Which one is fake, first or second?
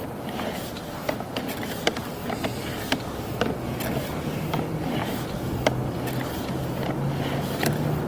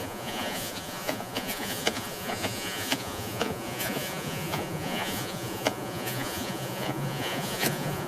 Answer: second